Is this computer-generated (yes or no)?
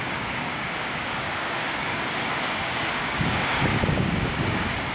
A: yes